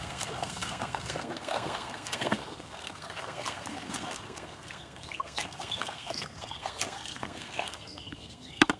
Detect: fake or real fake